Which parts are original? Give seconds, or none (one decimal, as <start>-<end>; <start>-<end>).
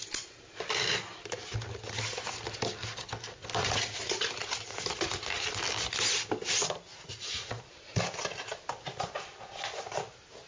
0.0-3.6; 4.3-6.9; 7.6-10.5